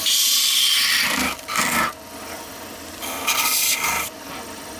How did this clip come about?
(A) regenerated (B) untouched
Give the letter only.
B